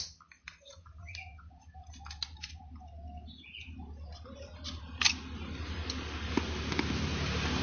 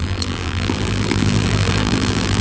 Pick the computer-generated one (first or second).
second